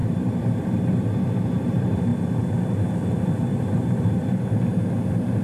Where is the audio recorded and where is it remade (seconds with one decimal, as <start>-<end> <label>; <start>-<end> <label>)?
0.0-5.4 remade